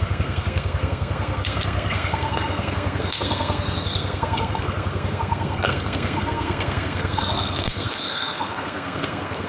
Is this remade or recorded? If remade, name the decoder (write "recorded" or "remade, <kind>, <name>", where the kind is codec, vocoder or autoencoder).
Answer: remade, codec, SNAC